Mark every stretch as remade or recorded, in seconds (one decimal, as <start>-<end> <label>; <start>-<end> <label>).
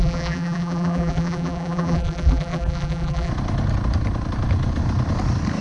0.0-3.3 remade; 3.3-5.6 recorded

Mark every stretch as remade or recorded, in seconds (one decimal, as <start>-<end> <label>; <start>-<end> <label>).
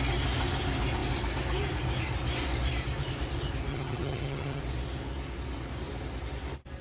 0.0-3.7 recorded; 3.7-4.6 remade; 4.6-6.8 recorded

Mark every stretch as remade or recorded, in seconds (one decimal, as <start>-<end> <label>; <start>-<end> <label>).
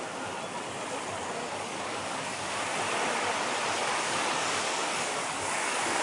0.0-1.2 recorded; 1.2-2.4 remade; 2.4-3.8 recorded; 3.8-6.0 remade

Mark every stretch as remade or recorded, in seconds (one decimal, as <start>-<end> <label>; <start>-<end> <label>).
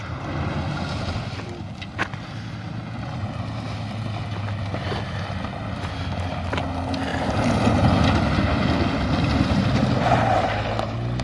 0.0-11.2 recorded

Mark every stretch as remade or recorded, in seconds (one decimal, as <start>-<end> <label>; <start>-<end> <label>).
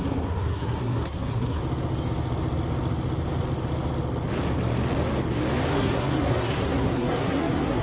0.0-1.6 remade; 1.6-5.7 recorded; 5.7-7.8 remade